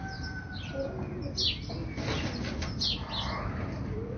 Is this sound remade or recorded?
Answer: recorded